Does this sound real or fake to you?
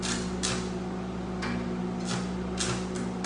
real